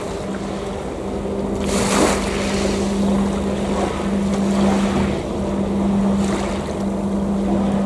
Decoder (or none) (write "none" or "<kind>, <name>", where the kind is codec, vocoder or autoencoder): none